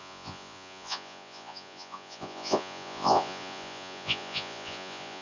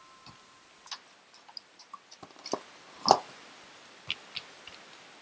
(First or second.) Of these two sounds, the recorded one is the second